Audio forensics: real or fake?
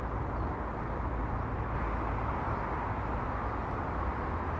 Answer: real